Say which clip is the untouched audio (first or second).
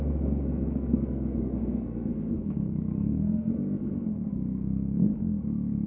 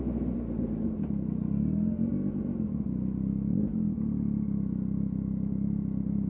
second